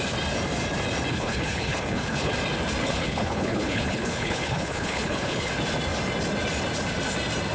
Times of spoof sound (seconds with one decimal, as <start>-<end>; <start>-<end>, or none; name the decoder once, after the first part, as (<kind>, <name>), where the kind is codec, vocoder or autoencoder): 1.1-2.3 (codec, HILCodec); 2.8-5.5